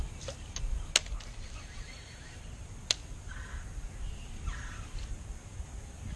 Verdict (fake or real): real